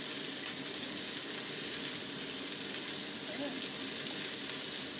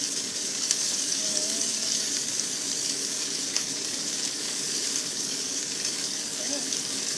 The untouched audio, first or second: first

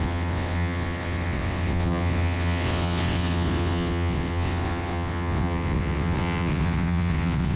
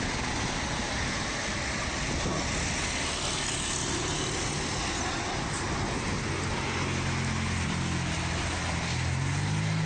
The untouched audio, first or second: second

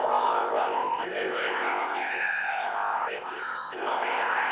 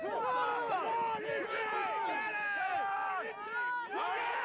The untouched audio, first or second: second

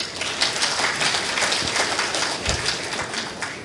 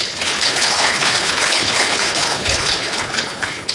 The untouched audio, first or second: first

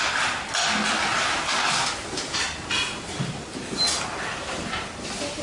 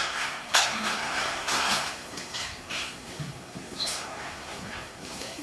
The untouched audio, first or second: first